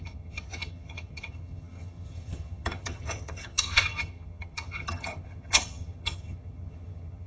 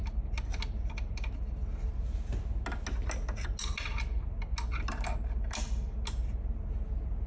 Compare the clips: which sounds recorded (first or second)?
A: second